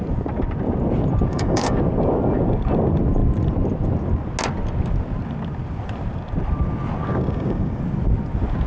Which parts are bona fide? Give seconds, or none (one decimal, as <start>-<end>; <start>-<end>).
0.0-1.3; 1.8-7.1; 7.8-8.7